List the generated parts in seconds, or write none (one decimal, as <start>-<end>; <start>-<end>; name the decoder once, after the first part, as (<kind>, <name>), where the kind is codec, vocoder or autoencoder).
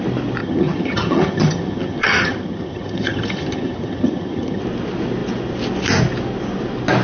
0.4-4.6 (vocoder, HiFi-GAN)